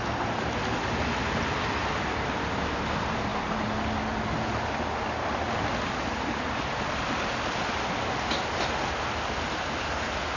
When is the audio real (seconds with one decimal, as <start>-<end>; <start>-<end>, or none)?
0.0-10.4